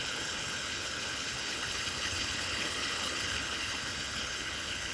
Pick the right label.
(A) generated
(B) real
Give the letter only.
A